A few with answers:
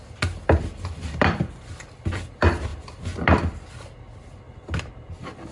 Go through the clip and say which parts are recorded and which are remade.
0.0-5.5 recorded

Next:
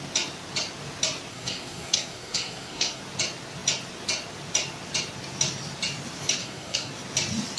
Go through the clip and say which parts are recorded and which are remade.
0.0-1.3 recorded; 1.3-3.0 remade; 3.0-6.4 recorded; 6.4-6.9 remade; 6.9-7.6 recorded

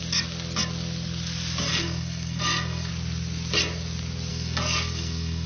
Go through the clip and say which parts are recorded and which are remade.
0.0-1.7 recorded; 1.7-2.9 remade; 2.9-4.3 recorded; 4.3-5.5 remade

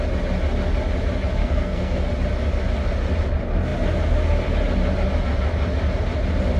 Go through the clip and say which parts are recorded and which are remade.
0.0-1.4 recorded; 1.4-2.1 remade; 2.1-6.6 recorded

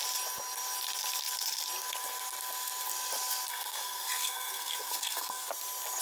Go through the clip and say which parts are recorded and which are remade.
0.0-3.5 recorded; 3.5-5.5 remade; 5.5-6.0 recorded

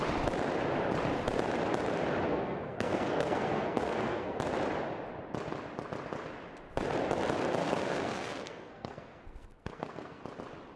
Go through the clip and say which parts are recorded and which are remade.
0.0-2.3 recorded; 2.3-4.4 remade; 4.4-7.6 recorded; 7.6-10.2 remade; 10.2-10.8 recorded

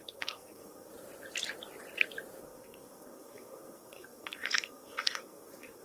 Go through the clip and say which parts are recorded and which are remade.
0.0-0.9 remade; 0.9-2.4 recorded; 2.4-5.8 remade

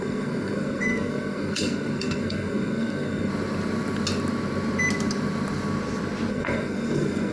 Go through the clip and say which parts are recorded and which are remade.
0.0-3.3 remade; 3.3-6.3 recorded; 6.3-7.3 remade